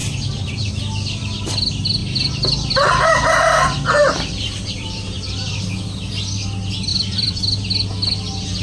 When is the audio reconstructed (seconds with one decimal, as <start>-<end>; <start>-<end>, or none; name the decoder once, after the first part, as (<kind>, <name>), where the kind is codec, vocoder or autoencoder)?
0.0-0.7 (vocoder, BigVGAN v2); 2.0-5.6; 6.9-7.4